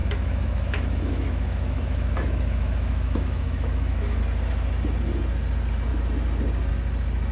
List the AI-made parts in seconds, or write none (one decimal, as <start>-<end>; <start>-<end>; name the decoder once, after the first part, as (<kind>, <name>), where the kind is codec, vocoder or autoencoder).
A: 0.0-4.2 (autoencoder, DAC-VAE)

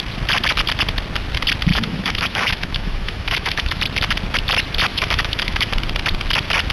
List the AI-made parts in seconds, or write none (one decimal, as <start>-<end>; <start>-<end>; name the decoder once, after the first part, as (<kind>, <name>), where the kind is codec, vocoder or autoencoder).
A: 1.7-3.8 (autoencoder, DAC-VAE); 4.9-5.7